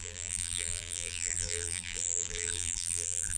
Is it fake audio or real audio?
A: fake